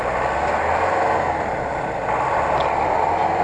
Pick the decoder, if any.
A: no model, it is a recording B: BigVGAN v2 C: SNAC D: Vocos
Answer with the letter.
A